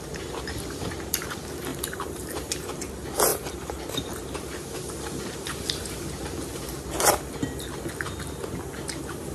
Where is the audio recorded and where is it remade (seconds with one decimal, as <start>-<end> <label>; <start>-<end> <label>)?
0.0-1.7 recorded; 1.7-2.9 remade; 2.9-3.3 recorded; 3.3-4.9 remade; 4.9-9.3 recorded